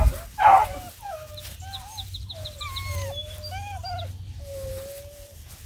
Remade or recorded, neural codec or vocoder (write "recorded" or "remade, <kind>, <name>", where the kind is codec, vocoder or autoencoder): recorded